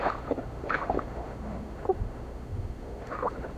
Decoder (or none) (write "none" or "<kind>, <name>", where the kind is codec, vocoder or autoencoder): autoencoder, DAC-VAE